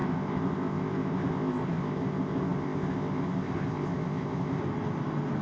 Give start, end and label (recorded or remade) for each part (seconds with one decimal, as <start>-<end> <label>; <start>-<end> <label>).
0.0-4.6 remade; 4.6-5.4 recorded

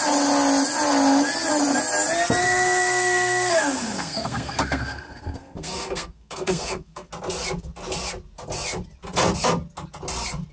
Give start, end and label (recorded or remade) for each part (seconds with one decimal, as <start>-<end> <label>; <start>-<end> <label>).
0.0-2.4 recorded; 2.4-7.1 remade; 7.1-10.5 recorded

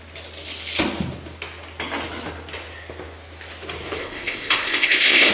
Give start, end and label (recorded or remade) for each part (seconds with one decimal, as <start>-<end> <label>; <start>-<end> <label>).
0.0-4.0 recorded; 4.0-5.3 remade

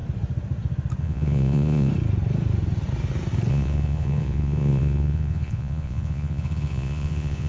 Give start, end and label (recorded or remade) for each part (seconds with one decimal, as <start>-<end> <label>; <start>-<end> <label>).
0.0-1.0 recorded; 1.0-1.9 remade; 1.9-3.5 recorded; 3.5-7.5 remade

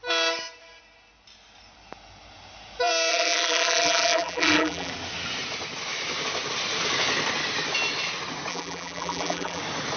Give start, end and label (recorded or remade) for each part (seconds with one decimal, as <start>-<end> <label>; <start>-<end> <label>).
0.0-3.1 recorded; 3.1-4.9 remade; 4.9-8.5 recorded; 8.5-9.6 remade; 9.6-10.0 recorded